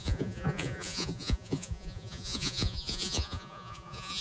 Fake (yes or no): yes